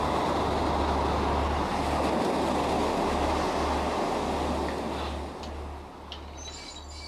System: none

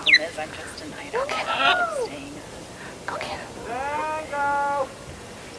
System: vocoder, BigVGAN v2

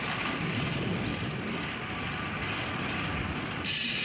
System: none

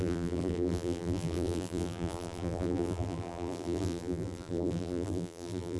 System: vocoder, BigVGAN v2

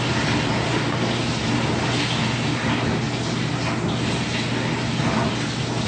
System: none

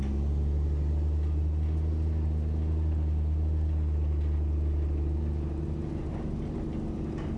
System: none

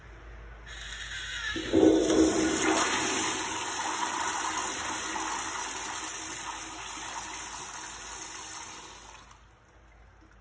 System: none